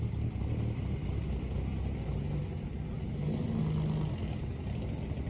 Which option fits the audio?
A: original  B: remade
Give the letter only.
A